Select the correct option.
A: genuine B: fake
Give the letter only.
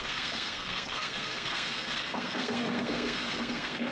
B